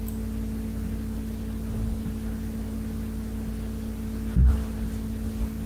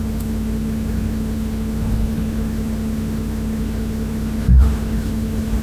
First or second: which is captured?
first